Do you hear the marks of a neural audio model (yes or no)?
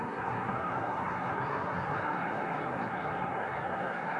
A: yes